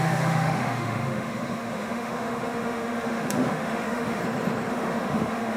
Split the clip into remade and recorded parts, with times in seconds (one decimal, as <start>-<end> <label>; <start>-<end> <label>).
0.0-4.2 remade; 4.2-4.7 recorded; 4.7-5.6 remade